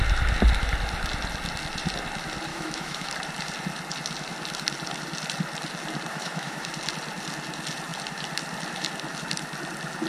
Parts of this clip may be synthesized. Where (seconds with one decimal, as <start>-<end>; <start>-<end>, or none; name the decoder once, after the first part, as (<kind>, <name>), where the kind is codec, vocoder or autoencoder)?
2.5-3.1 (autoencoder, DAC-VAE); 6.1-6.7